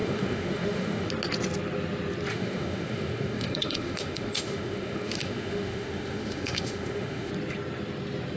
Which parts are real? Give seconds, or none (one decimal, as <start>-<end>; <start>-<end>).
1.1-2.3; 7.3-8.4